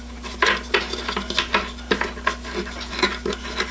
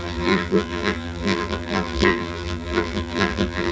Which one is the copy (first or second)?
second